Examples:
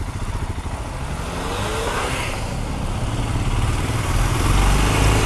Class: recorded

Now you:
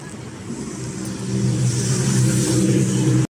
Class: recorded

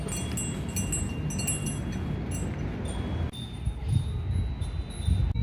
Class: recorded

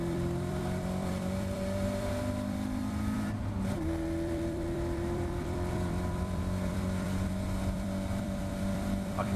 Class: remade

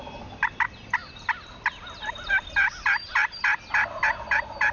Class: recorded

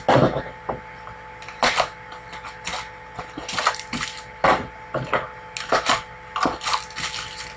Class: recorded